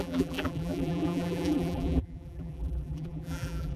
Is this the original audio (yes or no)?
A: no